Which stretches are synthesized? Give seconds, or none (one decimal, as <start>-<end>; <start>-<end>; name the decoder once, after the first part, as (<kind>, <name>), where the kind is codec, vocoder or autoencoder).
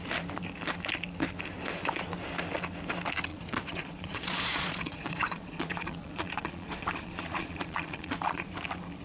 3.3-8.5 (vocoder, Vocos)